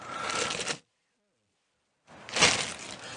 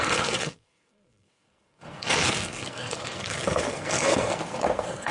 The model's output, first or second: second